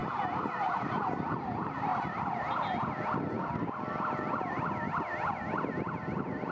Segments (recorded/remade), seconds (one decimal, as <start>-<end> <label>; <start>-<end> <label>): 0.0-6.5 recorded